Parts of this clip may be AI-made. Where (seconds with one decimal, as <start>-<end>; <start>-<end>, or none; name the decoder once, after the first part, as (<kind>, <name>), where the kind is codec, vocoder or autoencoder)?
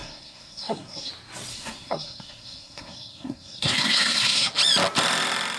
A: 0.0-1.1 (codec, SNAC); 1.5-4.5